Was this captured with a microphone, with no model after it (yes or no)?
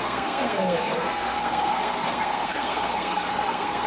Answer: no